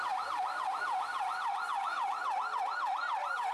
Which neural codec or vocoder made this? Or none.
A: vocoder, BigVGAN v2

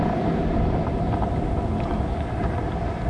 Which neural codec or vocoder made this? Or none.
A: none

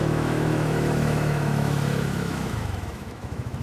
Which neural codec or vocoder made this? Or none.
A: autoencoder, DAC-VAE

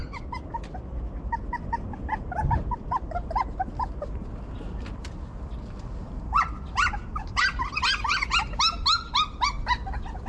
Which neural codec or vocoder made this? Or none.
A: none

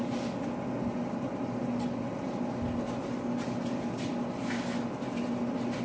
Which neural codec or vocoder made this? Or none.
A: none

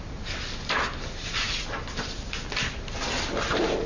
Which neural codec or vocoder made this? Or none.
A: none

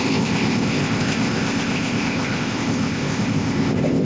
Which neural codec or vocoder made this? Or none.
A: codec, ZipCodec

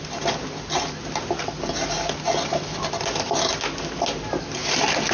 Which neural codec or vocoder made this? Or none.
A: none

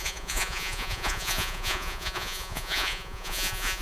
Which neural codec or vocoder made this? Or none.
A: vocoder, Vocos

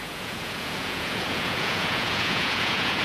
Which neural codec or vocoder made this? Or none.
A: vocoder, Vocos